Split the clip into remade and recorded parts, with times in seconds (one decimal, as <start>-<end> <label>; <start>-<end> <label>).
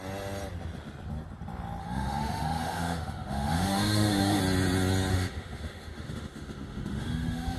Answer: 0.0-1.8 recorded; 1.8-4.4 remade; 4.4-5.1 recorded; 5.1-7.6 remade